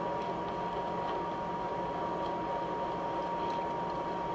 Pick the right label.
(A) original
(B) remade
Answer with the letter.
A